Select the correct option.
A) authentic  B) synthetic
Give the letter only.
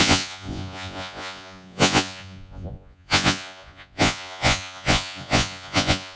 B